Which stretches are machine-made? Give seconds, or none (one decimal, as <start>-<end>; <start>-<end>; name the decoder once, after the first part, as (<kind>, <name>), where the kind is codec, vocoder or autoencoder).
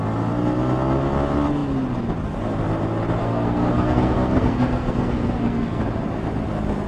3.2-5.8 (codec, SNAC)